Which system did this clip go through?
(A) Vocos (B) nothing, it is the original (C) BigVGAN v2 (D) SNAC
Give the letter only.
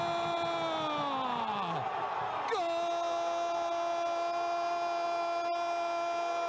B